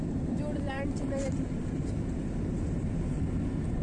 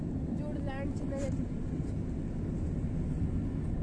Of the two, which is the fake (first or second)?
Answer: first